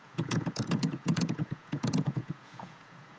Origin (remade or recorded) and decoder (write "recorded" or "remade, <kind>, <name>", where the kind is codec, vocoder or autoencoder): remade, vocoder, Vocos